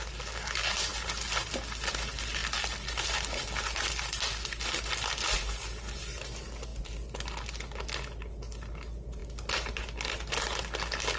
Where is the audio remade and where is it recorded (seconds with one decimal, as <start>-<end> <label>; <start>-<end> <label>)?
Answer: 0.0-11.2 recorded